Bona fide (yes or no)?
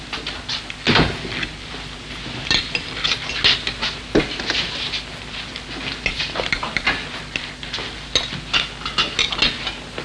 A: yes